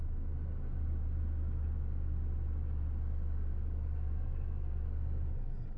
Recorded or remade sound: recorded